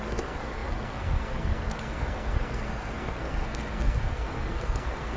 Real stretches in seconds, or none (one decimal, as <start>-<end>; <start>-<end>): none